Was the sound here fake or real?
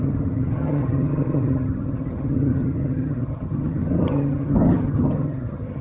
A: fake